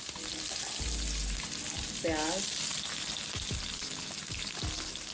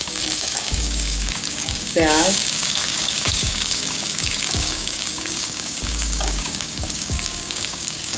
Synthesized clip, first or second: second